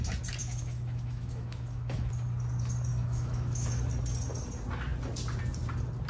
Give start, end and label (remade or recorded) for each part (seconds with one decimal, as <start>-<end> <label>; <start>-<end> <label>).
0.0-0.4 recorded; 0.4-2.1 remade; 2.1-2.9 recorded; 2.9-3.7 remade; 3.7-6.1 recorded